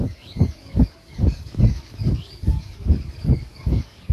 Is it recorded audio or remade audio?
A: remade